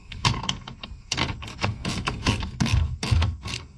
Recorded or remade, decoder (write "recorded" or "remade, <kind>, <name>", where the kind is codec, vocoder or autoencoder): remade, codec, SNAC